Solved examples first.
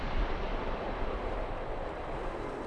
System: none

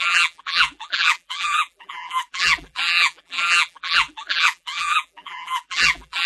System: vocoder, BigVGAN v2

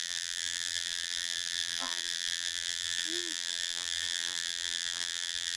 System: vocoder, BigVGAN v2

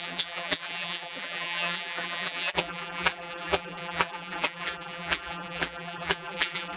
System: vocoder, BigVGAN v2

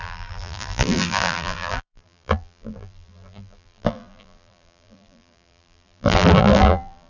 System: vocoder, BigVGAN v2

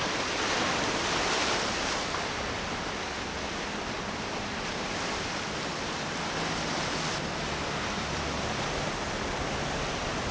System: none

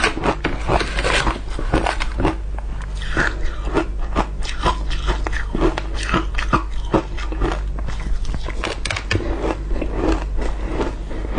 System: none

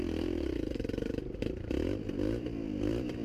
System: vocoder, BigVGAN v2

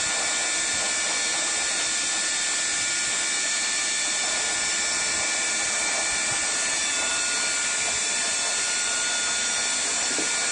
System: vocoder, BigVGAN v2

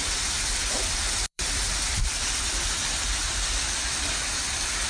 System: vocoder, BigVGAN v2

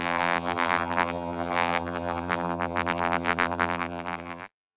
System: vocoder, BigVGAN v2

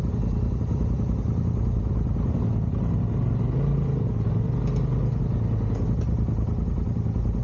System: none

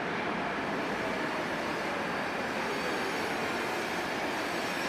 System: none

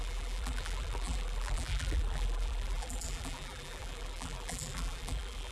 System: vocoder, BigVGAN v2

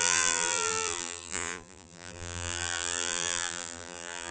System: vocoder, BigVGAN v2